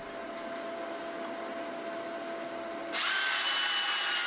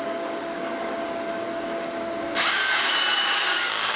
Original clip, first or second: first